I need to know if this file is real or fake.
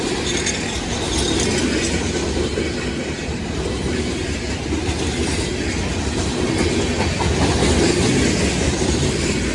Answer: real